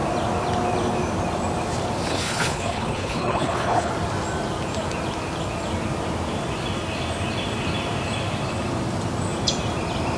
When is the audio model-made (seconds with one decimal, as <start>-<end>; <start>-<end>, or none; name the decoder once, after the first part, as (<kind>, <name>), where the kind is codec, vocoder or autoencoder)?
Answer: 2.1-3.9 (codec, HILCodec)